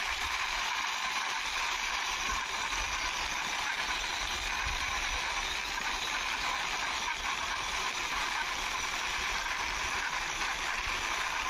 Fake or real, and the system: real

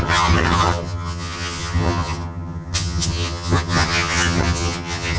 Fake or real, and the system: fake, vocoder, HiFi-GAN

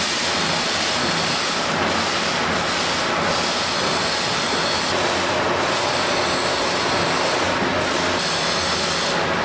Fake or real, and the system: real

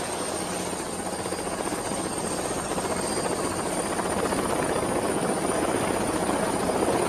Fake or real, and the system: real